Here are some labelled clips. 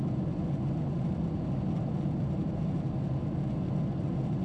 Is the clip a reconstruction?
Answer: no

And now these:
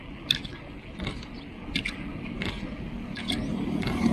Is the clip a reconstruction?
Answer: no